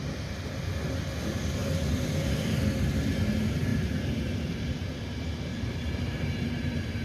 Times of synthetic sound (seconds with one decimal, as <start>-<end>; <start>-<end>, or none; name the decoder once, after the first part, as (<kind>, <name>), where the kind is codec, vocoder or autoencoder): 1.6-2.6 (vocoder, BigVGAN v2); 3.7-6.6